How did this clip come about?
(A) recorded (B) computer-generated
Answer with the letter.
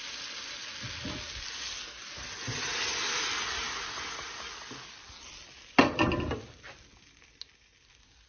A